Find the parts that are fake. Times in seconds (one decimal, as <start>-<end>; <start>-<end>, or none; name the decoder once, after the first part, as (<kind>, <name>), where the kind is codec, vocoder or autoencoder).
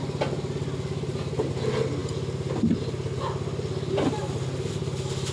1.1-1.6 (vocoder, BigVGAN v2)